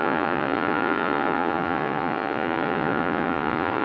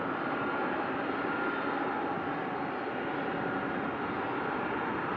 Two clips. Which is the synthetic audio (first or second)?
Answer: first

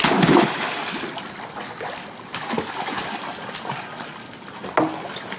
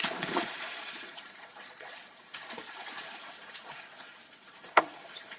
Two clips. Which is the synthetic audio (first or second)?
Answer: second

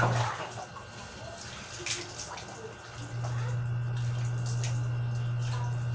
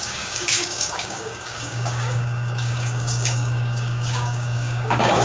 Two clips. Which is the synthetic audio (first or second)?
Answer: second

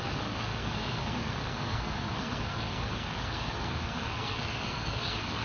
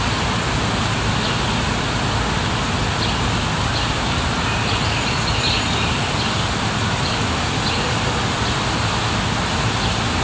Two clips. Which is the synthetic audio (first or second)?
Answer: first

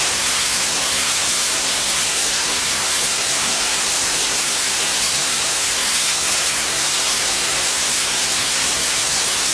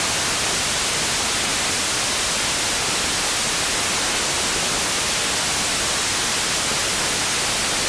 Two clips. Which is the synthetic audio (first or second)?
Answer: first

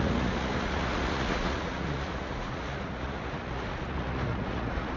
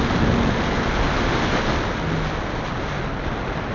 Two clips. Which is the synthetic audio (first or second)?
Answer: first